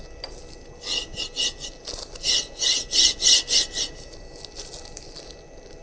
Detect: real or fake real